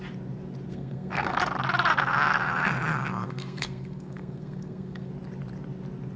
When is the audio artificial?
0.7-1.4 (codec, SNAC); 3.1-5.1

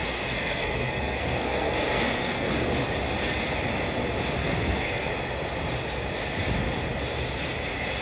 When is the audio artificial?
0.0-2.5 (codec, SNAC); 4.4-5.1

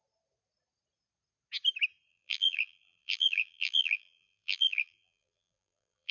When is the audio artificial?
2.1-6.1 (vocoder, BigVGAN v2)

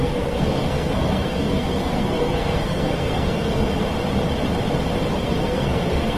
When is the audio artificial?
0.0-3.7 (codec, SNAC); 5.2-6.2

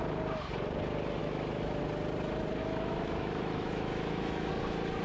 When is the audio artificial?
1.2-1.8 (autoencoder, DAC-VAE); 2.6-4.5